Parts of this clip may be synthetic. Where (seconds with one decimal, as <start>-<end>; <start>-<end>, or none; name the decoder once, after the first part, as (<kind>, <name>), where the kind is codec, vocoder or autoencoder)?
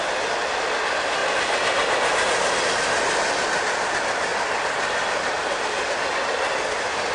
none